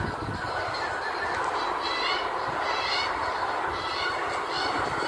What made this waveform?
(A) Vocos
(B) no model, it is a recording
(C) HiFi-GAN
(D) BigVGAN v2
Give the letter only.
B